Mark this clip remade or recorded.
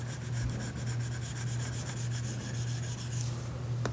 recorded